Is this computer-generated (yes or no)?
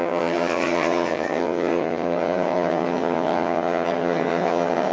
yes